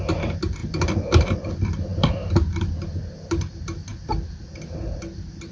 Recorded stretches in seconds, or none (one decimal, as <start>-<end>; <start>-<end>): 0.0-5.5

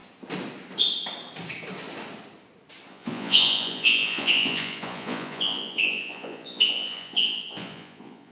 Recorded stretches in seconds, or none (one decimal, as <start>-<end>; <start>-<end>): 0.0-2.9

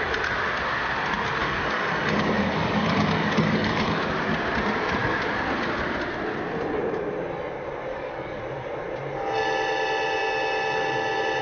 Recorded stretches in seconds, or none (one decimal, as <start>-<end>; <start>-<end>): 0.0-1.4; 4.0-7.9; 8.4-11.4

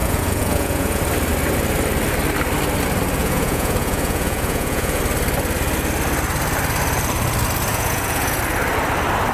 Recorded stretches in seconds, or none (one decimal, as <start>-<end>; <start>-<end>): 1.0-3.2; 5.0-7.7; 8.4-9.3